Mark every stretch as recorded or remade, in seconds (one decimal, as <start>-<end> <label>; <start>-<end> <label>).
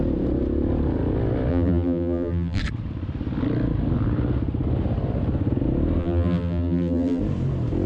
0.0-1.5 recorded; 1.5-2.6 remade; 2.6-6.0 recorded; 6.0-7.2 remade; 7.2-7.9 recorded